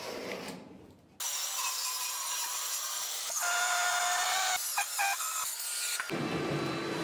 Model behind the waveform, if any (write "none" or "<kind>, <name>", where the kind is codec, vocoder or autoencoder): none